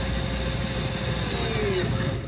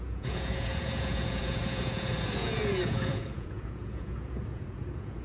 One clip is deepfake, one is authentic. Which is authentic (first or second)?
first